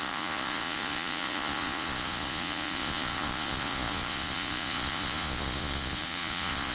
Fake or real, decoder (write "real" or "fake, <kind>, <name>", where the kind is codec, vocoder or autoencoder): fake, vocoder, Vocos